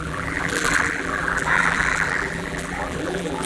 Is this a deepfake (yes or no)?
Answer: yes